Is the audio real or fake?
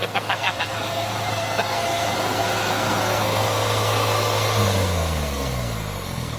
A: fake